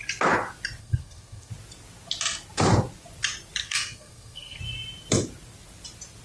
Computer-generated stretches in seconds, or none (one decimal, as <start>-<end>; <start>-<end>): 0.8-1.5; 3.6-4.6